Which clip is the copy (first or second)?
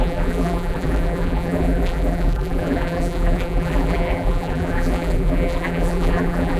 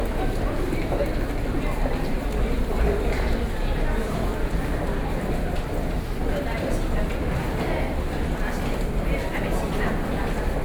first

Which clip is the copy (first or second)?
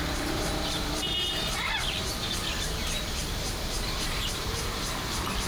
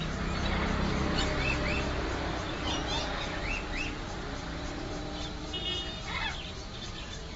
first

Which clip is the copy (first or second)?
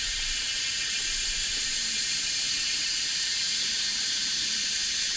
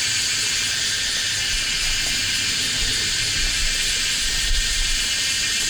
first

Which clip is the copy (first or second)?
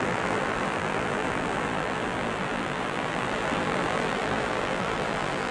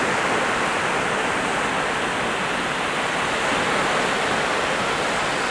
first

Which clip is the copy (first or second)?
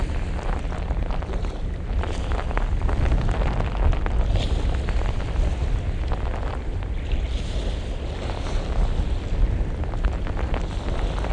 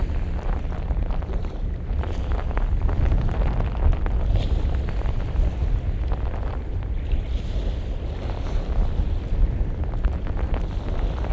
second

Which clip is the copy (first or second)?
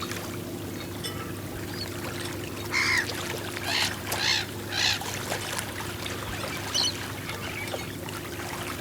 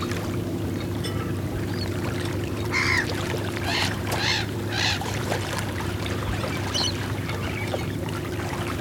second